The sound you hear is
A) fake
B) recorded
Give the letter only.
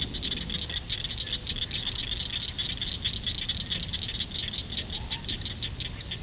B